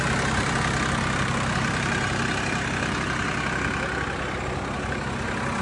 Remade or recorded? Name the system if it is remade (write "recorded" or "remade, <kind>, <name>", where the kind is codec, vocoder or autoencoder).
recorded